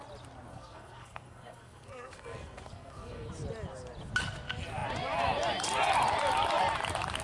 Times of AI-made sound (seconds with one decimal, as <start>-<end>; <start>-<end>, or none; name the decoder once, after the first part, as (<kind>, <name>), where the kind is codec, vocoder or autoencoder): 0.5-3.3 (codec, SNAC)